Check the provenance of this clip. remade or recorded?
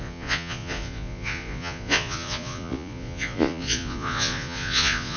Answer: remade